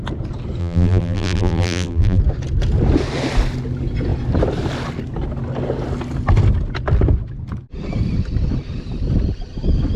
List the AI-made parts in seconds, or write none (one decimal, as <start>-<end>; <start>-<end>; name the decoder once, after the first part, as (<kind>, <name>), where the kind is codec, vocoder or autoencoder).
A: 0.6-2.2 (vocoder, BigVGAN v2)